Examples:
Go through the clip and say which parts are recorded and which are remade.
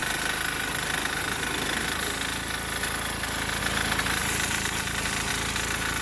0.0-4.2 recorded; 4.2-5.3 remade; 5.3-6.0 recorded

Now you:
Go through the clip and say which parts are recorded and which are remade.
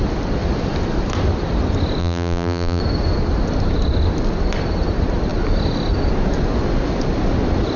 0.0-2.0 recorded; 2.0-2.8 remade; 2.8-7.8 recorded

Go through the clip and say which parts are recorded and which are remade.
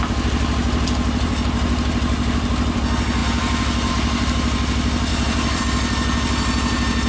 0.0-3.2 recorded; 3.2-3.9 remade; 3.9-5.1 recorded; 5.1-5.6 remade; 5.6-7.1 recorded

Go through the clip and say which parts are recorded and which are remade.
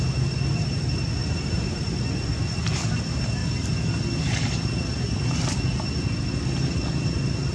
0.0-1.2 recorded; 1.2-1.9 remade; 1.9-7.5 recorded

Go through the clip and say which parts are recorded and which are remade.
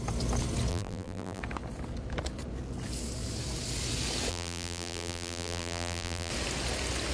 0.0-0.7 recorded; 0.7-1.4 remade; 1.4-4.3 recorded; 4.3-6.3 remade; 6.3-7.1 recorded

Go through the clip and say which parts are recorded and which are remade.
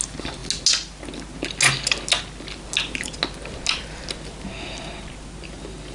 0.0-5.9 recorded